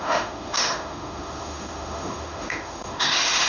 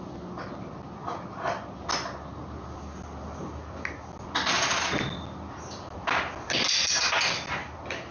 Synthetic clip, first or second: first